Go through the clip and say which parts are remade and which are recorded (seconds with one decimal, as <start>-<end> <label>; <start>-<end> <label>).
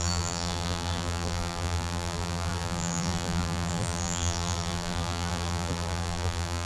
0.0-6.7 remade